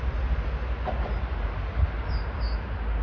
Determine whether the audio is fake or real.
real